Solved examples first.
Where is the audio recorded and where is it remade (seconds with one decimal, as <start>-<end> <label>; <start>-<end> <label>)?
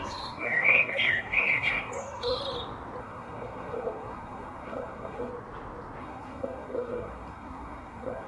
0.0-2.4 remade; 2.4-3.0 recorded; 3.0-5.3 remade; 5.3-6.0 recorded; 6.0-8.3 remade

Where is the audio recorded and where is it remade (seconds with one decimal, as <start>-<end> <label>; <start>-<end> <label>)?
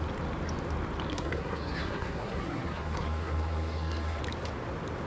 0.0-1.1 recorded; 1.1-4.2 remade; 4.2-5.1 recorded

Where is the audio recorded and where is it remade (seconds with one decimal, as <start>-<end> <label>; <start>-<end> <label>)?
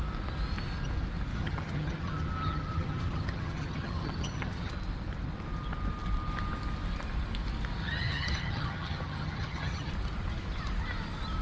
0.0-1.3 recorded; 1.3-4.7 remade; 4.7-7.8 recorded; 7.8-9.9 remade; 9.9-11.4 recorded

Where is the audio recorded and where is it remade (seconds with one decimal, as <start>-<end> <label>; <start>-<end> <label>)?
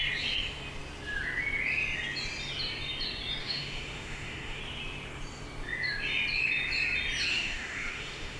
0.0-3.4 recorded; 3.4-4.6 remade; 4.6-7.3 recorded; 7.3-8.4 remade